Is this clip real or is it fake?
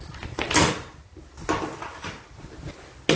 real